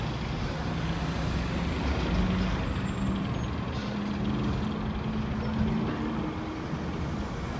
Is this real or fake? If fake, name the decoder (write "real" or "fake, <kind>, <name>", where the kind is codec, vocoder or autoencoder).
real